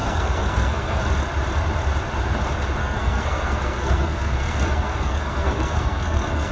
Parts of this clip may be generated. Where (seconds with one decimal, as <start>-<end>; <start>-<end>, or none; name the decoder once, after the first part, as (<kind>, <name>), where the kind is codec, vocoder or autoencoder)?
0.0-1.0 (codec, SNAC); 2.8-6.5